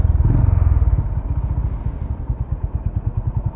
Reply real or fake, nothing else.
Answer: real